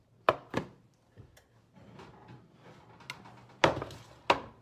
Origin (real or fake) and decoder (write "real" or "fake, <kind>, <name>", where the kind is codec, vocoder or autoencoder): real